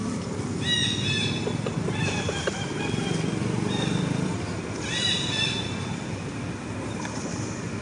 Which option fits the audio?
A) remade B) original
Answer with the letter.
B